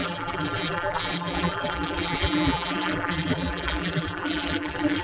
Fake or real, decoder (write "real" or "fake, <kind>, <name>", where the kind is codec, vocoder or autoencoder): fake, vocoder, BigVGAN v2